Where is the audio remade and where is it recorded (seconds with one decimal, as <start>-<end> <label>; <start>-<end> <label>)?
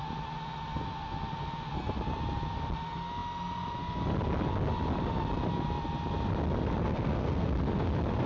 0.0-6.8 recorded; 6.8-7.6 remade; 7.6-8.3 recorded